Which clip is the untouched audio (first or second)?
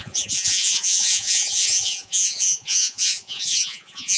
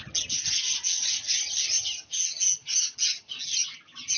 second